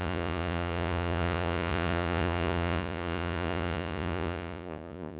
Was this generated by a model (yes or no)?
yes